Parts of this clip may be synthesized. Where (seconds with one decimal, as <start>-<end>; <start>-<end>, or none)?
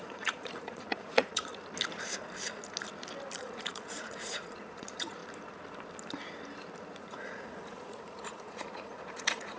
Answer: 0.0-1.5; 3.4-5.2; 6.9-9.6